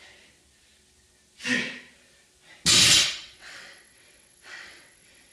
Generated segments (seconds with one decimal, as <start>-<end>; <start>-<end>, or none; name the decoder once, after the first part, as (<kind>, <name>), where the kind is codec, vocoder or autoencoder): 3.2-5.3 (vocoder, WaveNeXt)